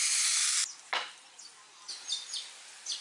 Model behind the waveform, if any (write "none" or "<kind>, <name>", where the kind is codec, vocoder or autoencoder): none